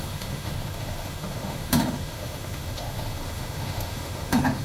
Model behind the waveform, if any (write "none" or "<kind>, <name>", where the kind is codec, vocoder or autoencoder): autoencoder, DAC-VAE